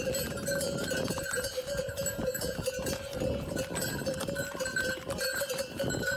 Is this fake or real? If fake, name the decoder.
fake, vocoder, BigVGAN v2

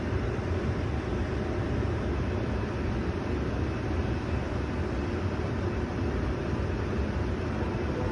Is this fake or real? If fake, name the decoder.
fake, vocoder, BigVGAN v2